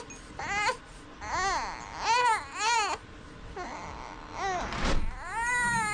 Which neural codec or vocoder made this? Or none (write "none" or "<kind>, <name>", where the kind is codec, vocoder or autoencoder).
none